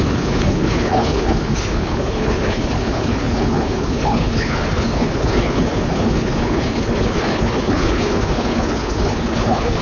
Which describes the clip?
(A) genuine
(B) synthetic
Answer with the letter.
B